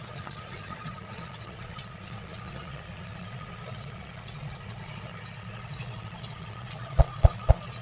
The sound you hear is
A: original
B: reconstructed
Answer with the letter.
B